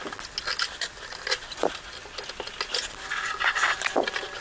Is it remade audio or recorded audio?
recorded